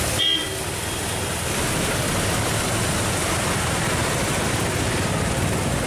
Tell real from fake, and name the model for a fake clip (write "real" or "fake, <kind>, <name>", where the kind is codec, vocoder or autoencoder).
fake, vocoder, BigVGAN v2